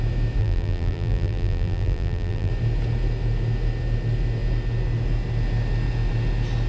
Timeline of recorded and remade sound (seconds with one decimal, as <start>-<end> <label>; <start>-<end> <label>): 0.0-0.4 recorded; 0.4-2.5 remade; 2.5-6.7 recorded